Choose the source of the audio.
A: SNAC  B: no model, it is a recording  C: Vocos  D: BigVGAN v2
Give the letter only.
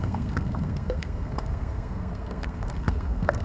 A